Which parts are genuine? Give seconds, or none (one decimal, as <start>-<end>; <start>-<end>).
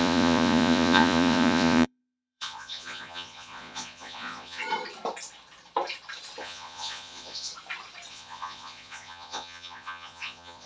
4.6-6.4; 7.5-8.1